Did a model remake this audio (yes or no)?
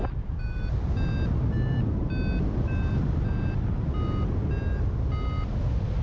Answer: no